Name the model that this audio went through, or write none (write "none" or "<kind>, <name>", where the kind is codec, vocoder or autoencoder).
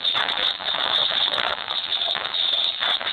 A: vocoder, WaveNeXt